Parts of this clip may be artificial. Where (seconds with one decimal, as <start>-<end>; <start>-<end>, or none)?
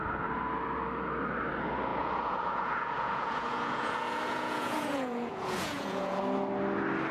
1.9-6.2